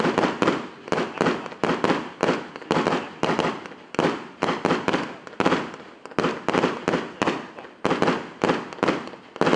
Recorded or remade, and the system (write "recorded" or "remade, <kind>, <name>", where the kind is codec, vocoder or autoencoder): recorded